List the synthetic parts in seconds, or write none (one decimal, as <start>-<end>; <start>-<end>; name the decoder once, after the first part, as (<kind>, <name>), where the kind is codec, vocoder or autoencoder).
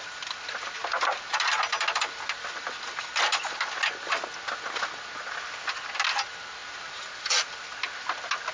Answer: none